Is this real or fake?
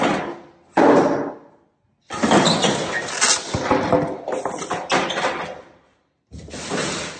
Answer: real